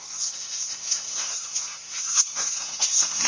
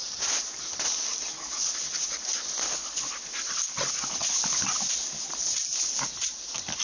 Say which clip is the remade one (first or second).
first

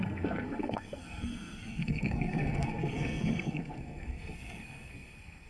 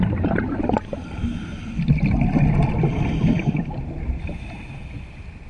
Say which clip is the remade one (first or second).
first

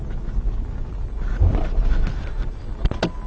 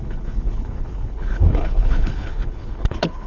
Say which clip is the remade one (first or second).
second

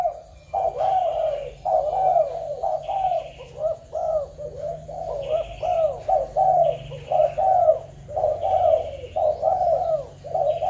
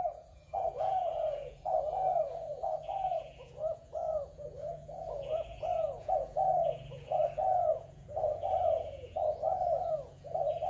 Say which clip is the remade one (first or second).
second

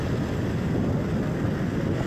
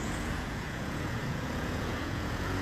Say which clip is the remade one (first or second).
second